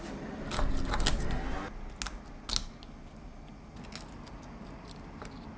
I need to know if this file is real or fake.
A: real